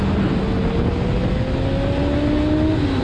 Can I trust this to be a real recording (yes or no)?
yes